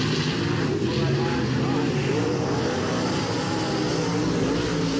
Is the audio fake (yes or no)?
no